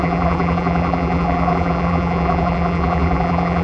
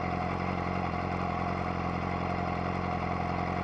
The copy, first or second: first